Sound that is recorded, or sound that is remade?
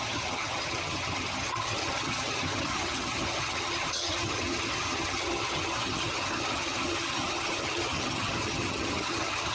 remade